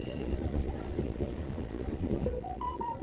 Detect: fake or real fake